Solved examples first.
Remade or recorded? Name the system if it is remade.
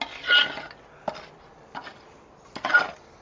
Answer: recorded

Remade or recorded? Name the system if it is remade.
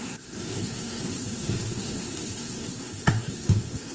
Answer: remade, codec, SNAC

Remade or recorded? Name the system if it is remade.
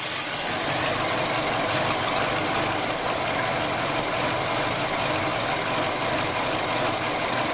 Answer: recorded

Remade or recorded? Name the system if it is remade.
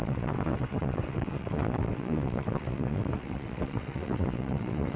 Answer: remade, vocoder, WaveNeXt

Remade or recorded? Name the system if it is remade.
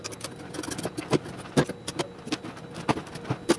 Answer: recorded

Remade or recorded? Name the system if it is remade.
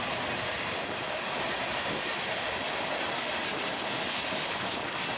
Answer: recorded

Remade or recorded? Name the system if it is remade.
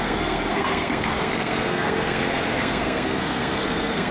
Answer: remade, codec, SNAC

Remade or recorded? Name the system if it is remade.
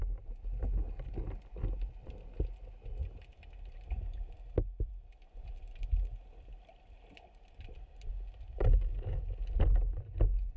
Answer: recorded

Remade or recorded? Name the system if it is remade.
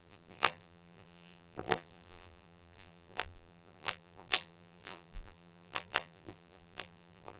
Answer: remade, vocoder, BigVGAN v2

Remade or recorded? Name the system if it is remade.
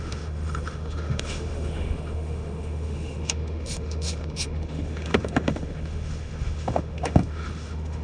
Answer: remade, autoencoder, DAC-VAE